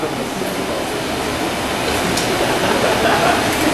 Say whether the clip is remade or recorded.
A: recorded